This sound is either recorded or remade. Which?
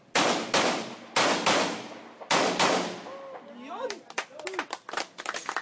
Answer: recorded